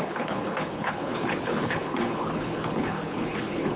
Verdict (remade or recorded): remade